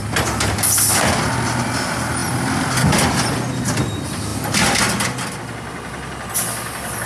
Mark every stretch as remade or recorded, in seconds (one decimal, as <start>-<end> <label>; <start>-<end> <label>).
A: 0.0-7.1 recorded